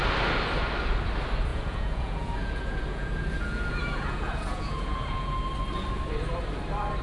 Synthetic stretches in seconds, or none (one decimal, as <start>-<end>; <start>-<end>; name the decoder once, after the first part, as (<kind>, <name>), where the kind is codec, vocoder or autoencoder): 1.5-5.4 (vocoder, Vocos)